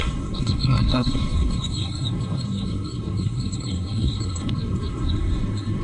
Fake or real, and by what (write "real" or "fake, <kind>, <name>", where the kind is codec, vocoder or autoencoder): fake, codec, SNAC